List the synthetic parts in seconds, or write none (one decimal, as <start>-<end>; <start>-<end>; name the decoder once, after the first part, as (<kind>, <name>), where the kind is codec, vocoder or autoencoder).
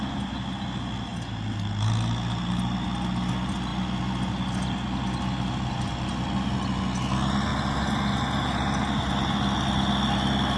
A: none